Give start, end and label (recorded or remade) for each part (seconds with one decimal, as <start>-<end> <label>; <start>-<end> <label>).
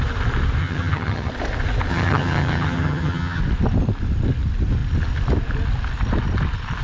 0.0-0.6 recorded; 0.6-1.3 remade; 1.3-1.9 recorded; 1.9-3.4 remade; 3.4-6.8 recorded